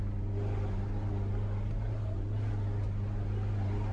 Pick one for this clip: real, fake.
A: real